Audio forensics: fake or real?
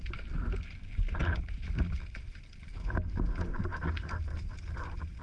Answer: real